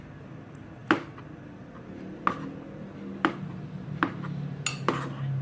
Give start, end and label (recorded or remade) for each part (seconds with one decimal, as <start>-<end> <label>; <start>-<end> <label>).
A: 0.0-5.4 recorded